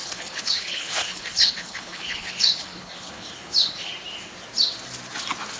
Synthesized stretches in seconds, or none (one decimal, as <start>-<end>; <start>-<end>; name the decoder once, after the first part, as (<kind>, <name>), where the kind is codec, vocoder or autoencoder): 0.0-3.9 (codec, HILCodec)